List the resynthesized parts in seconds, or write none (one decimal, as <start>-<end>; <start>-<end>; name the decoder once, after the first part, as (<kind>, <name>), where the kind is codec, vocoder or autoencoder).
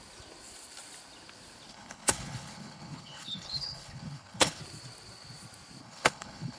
1.7-4.6 (codec, HILCodec); 5.8-6.6